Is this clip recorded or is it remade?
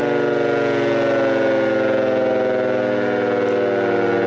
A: recorded